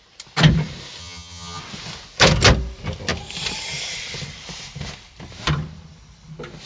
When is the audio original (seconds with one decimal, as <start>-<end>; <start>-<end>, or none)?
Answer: 0.0-1.0; 1.6-6.7